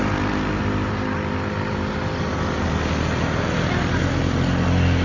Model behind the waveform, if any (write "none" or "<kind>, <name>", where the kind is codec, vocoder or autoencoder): none